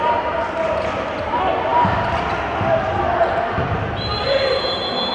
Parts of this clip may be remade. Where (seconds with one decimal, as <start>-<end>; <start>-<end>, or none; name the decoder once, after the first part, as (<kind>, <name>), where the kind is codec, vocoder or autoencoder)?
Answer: none